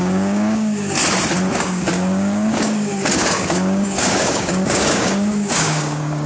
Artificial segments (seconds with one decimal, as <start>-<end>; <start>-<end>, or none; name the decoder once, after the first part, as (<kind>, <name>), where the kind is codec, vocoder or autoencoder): 0.0-1.0 (codec, DAC); 1.5-6.3